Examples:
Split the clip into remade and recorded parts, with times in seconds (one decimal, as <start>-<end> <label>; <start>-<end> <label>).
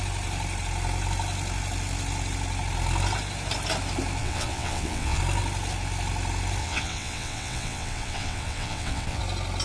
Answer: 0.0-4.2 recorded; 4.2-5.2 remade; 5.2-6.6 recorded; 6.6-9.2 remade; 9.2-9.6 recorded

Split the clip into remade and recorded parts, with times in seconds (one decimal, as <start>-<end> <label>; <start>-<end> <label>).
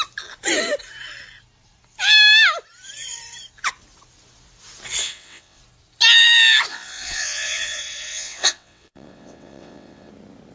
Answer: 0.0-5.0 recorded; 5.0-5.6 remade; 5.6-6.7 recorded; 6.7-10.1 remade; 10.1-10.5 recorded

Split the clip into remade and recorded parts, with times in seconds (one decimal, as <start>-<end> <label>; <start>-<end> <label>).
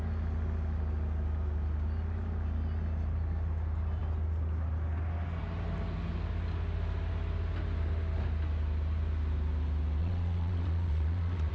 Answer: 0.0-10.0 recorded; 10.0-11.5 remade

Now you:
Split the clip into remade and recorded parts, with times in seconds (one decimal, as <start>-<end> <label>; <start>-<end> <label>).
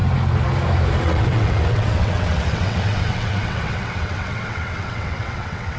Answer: 0.0-1.0 recorded; 1.0-5.8 remade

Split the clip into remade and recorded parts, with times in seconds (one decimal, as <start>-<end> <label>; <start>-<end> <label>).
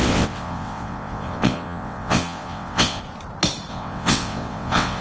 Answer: 0.0-3.0 remade; 3.0-3.7 recorded; 3.7-5.0 remade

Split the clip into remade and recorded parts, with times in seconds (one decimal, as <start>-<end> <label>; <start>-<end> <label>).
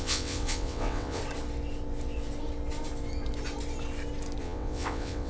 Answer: 0.0-1.2 remade; 1.2-4.4 recorded; 4.4-5.3 remade